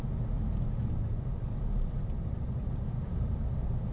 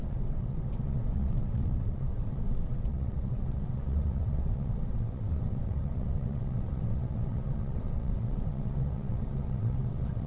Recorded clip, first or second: first